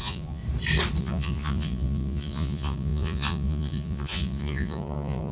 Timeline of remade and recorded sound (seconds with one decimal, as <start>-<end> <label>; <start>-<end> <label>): 0.0-0.4 remade; 0.4-1.0 recorded; 1.0-5.3 remade